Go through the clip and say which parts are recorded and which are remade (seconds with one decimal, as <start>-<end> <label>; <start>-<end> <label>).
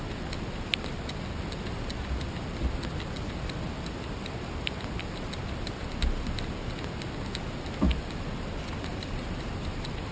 0.0-8.9 recorded; 8.9-9.5 remade; 9.5-10.1 recorded